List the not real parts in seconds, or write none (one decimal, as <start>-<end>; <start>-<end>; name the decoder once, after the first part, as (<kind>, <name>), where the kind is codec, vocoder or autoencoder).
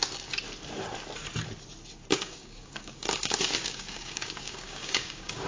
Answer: 2.1-5.5 (codec, DAC)